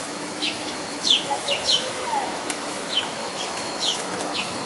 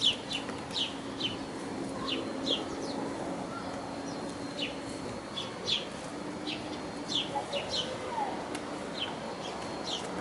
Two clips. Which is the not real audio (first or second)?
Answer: first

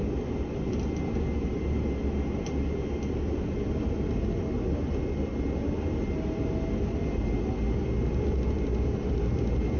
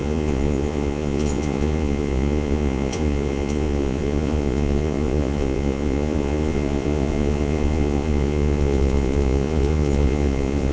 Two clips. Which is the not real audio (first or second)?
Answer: second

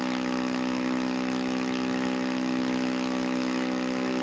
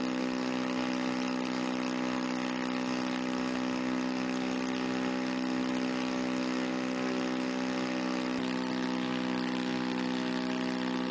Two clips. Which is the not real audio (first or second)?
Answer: first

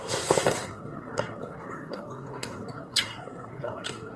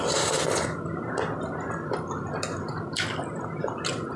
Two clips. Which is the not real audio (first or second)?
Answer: first